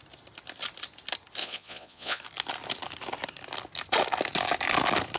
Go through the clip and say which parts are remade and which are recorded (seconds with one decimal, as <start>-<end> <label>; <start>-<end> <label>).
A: 0.0-1.4 recorded; 1.4-2.2 remade; 2.2-5.2 recorded